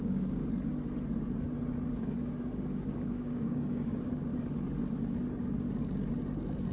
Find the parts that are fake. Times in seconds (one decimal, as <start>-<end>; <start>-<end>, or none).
0.0-0.4; 1.9-4.3